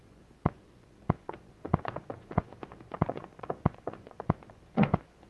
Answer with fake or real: fake